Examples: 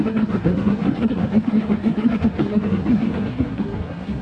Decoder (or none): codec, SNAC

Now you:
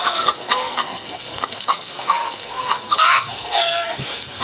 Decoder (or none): codec, SNAC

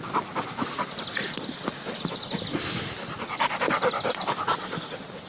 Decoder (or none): none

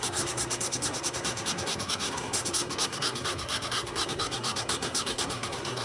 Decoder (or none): codec, SNAC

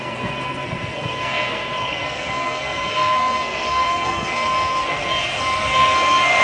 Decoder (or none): codec, SNAC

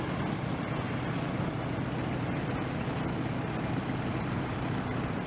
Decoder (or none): none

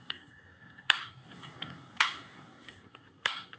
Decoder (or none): codec, SNAC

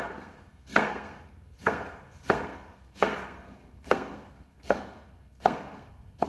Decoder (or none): codec, SNAC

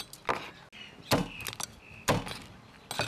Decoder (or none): none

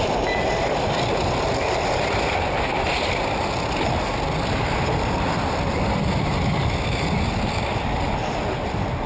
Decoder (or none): none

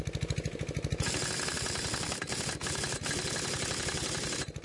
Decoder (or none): none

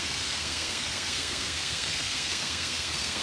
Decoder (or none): codec, SNAC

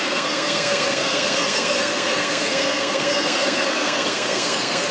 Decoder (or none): codec, SNAC